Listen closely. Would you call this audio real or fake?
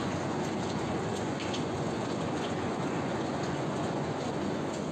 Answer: fake